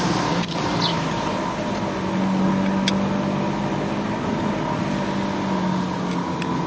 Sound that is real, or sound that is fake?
real